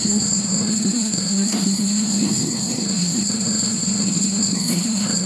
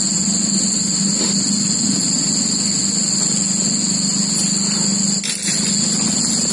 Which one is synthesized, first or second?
first